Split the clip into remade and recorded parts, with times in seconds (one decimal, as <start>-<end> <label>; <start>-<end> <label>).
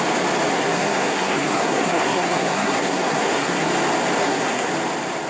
0.0-0.5 recorded; 0.5-3.7 remade; 3.7-4.2 recorded; 4.2-4.7 remade; 4.7-5.3 recorded